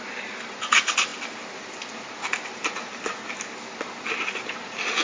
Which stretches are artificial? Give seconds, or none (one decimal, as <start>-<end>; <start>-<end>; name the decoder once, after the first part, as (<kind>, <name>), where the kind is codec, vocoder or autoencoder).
none